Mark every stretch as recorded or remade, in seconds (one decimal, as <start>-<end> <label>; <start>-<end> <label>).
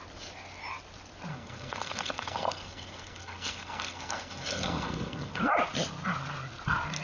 0.0-1.3 recorded; 1.3-5.5 remade; 5.5-7.0 recorded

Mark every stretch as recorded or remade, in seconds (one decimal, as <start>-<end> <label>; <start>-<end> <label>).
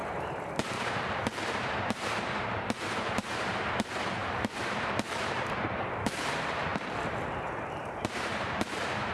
0.0-6.7 remade; 6.7-8.2 recorded; 8.2-9.1 remade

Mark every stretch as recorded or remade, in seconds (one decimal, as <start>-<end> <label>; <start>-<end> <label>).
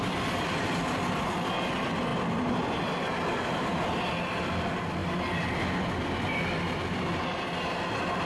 0.0-8.3 recorded